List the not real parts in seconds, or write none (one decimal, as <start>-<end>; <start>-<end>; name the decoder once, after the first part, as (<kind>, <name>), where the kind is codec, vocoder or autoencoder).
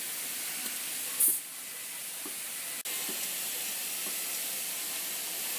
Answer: none